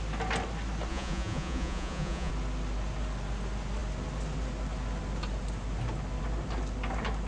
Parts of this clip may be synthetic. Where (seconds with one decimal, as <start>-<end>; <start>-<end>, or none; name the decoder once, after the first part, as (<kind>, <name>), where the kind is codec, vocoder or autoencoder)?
0.9-2.3 (vocoder, Vocos)